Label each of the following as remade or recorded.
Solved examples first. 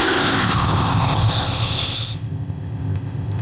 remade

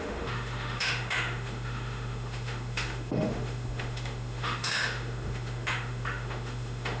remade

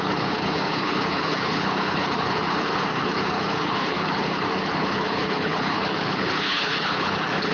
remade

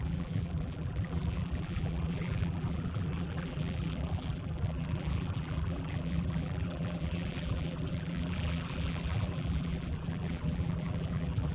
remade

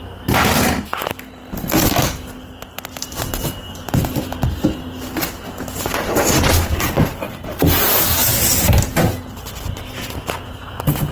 recorded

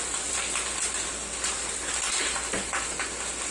recorded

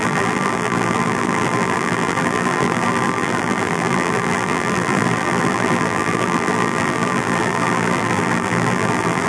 remade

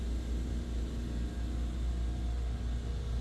recorded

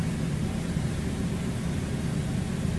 recorded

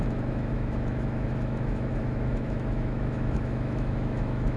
remade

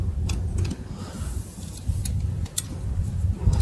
recorded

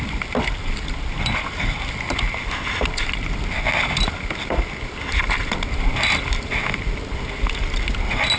recorded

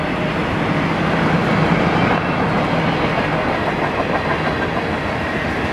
recorded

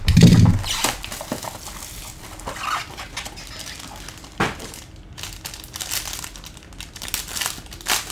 recorded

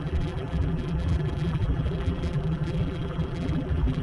remade